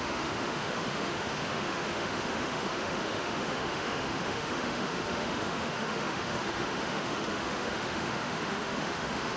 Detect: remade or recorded remade